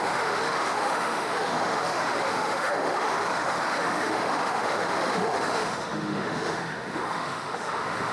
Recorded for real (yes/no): no